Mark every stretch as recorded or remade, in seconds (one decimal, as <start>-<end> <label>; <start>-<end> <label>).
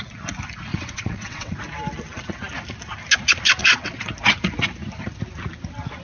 0.0-0.7 recorded; 0.7-1.6 remade; 1.6-3.6 recorded; 3.6-4.1 remade; 4.1-6.0 recorded